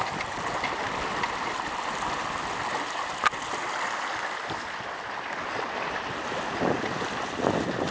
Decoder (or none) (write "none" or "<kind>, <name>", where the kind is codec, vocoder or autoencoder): none